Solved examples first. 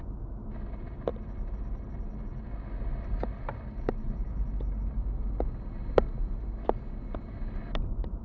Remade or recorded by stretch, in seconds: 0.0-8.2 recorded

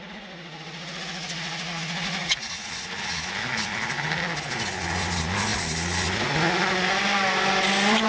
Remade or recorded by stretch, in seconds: 0.0-8.1 recorded

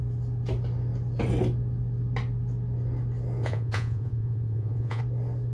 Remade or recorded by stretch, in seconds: 0.0-3.4 recorded; 3.4-5.0 remade; 5.0-5.5 recorded